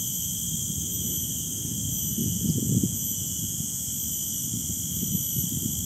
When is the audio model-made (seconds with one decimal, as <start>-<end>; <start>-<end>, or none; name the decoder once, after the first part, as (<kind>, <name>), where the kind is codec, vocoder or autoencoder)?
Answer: 2.2-3.8 (vocoder, Vocos)